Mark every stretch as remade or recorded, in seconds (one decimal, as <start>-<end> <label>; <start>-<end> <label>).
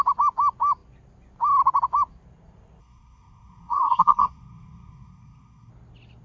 0.0-2.8 recorded; 2.8-5.7 remade; 5.7-6.2 recorded